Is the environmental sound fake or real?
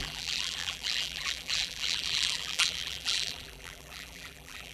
fake